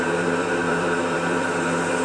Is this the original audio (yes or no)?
no